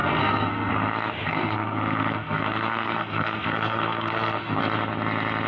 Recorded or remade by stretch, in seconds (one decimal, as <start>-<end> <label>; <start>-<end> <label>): 0.0-0.7 remade; 0.7-1.3 recorded; 1.3-4.6 remade; 4.6-5.5 recorded

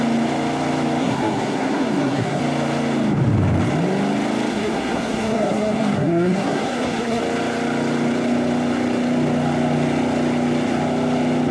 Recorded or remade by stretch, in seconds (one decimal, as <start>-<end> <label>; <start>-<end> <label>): 0.0-1.0 recorded; 1.0-2.4 remade; 2.4-4.5 recorded; 4.5-7.2 remade; 7.2-11.5 recorded

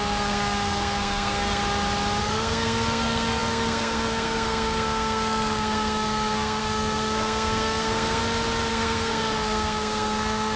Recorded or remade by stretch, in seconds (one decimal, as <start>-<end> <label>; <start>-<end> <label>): 0.0-1.6 remade; 1.6-2.2 recorded; 2.2-8.2 remade; 8.2-8.7 recorded; 8.7-10.6 remade

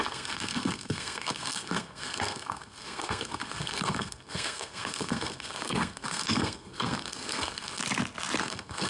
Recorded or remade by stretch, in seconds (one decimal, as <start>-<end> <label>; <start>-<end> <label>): 0.0-7.8 remade; 7.8-8.4 recorded; 8.4-8.9 remade

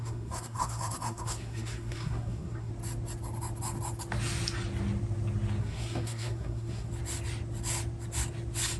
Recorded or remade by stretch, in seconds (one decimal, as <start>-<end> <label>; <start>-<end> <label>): 0.0-2.7 remade; 2.7-5.6 recorded; 5.6-6.9 remade; 6.9-8.8 recorded

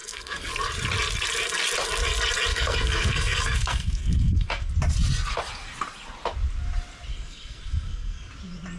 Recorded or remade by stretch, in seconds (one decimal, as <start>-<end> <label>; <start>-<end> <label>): 0.0-0.5 remade; 0.5-2.5 recorded; 2.5-4.7 remade; 4.7-7.1 recorded; 7.1-8.3 remade; 8.3-8.8 recorded

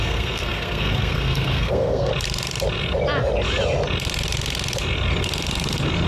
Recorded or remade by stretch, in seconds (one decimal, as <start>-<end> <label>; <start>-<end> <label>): 0.0-2.1 remade; 2.1-6.1 recorded

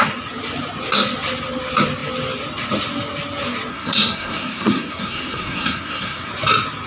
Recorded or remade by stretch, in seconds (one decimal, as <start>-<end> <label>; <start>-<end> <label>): 0.0-3.7 recorded; 3.7-6.3 remade; 6.3-6.9 recorded